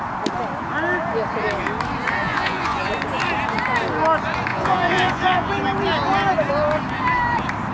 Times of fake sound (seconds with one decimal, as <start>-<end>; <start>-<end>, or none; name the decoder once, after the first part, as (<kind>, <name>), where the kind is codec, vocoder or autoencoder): 2.2-2.9 (vocoder, Vocos); 4.5-5.5